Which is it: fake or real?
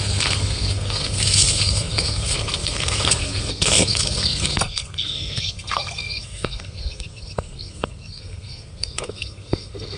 fake